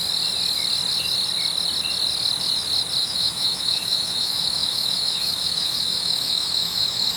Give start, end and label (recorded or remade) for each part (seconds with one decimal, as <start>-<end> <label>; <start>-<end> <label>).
0.0-3.0 recorded; 3.0-7.2 remade